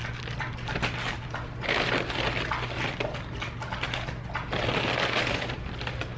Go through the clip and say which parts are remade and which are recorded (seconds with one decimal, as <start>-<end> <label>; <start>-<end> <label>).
0.0-6.2 recorded